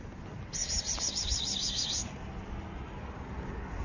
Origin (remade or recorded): recorded